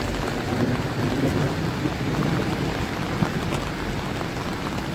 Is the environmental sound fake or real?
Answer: real